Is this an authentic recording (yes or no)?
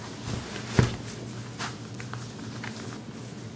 yes